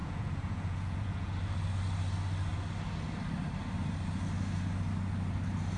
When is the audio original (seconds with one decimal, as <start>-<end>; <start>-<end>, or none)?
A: 1.3-5.8